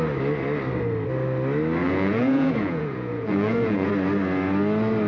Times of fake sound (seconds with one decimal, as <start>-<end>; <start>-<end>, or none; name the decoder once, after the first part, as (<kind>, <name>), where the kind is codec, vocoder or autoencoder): 1.8-3.9 (vocoder, Vocos)